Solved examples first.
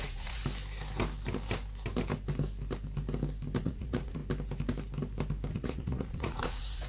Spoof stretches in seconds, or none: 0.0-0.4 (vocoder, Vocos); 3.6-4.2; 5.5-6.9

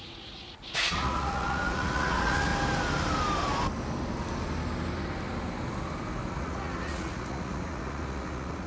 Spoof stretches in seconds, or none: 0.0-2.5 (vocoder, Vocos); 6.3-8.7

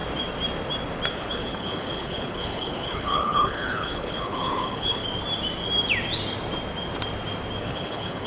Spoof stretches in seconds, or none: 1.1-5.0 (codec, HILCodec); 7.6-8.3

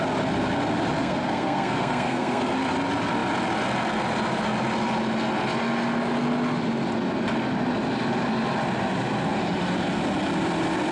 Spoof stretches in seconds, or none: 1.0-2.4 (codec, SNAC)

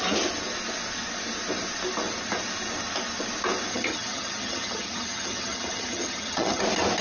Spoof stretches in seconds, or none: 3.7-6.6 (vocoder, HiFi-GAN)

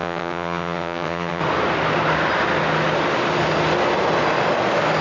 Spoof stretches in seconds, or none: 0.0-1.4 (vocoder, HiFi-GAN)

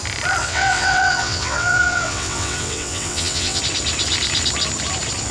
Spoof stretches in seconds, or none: 0.4-3.6 (vocoder, WaveNeXt)